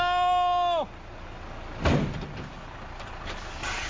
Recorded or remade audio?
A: recorded